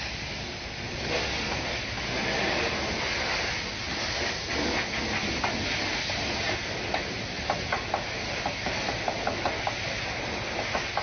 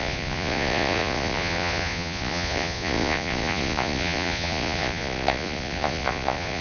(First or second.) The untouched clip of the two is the first